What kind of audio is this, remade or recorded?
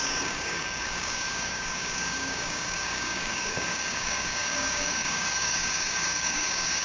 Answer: remade